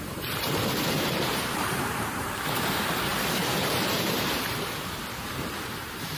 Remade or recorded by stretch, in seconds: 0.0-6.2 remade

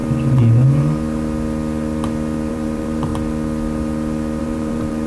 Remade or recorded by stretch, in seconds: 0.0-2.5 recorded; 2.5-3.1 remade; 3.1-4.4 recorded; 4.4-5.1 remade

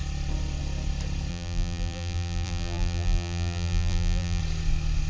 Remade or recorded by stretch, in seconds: 0.0-1.3 recorded; 1.3-4.4 remade; 4.4-5.1 recorded

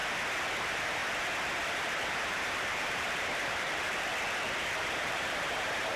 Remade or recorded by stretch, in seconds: 0.0-0.6 recorded; 0.6-1.0 remade; 1.0-1.7 recorded; 1.7-4.1 remade; 4.1-4.7 recorded; 4.7-6.0 remade